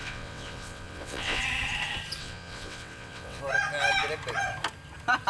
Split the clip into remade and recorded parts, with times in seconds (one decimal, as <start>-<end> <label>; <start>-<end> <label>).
0.0-1.4 remade; 1.4-2.2 recorded; 2.2-3.4 remade; 3.4-5.3 recorded